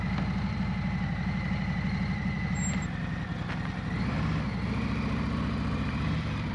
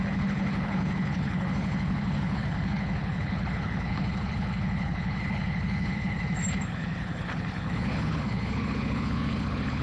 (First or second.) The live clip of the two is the first